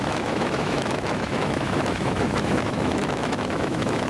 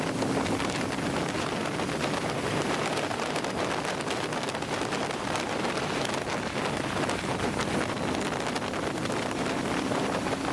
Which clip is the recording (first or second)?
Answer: second